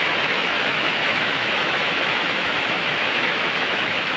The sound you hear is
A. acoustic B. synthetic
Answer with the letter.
B